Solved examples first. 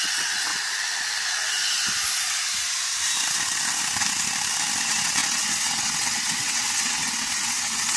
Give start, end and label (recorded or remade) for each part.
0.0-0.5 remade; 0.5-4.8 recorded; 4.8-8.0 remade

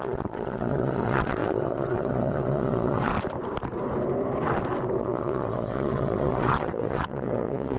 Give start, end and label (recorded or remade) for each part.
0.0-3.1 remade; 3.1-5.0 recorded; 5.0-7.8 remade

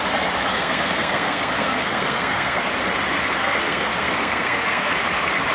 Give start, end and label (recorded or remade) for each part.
0.0-0.5 recorded; 0.5-2.7 remade; 2.7-3.4 recorded; 3.4-4.9 remade; 4.9-5.5 recorded

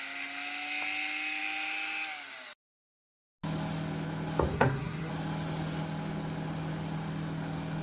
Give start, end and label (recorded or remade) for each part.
0.0-4.5 recorded; 4.5-5.1 remade; 5.1-7.8 recorded

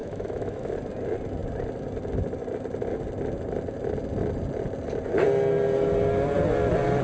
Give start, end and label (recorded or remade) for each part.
0.0-0.7 remade; 0.7-7.0 recorded